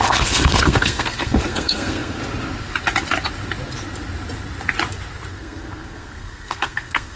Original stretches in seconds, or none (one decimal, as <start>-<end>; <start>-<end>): 2.2-5.3